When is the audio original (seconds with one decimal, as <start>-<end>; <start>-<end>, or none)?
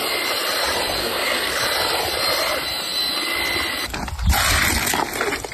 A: 0.0-1.0; 1.5-5.5